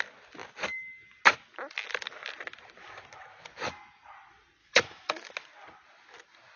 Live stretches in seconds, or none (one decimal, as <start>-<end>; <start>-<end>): 0.0-4.6; 5.3-6.6